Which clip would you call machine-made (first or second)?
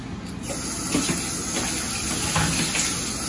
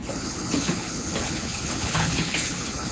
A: second